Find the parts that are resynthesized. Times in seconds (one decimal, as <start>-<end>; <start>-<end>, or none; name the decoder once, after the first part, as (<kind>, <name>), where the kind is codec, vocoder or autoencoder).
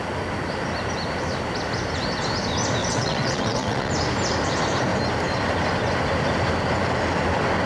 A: 2.8-3.9 (vocoder, WaveNeXt)